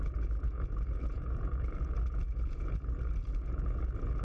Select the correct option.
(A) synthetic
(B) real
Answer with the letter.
A